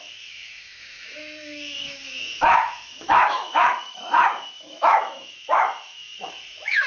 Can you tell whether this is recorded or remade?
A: remade